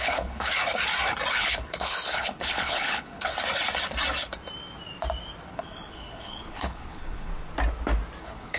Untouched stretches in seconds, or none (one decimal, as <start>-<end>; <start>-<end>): 0.5-1.3; 3.3-5.5; 7.3-8.2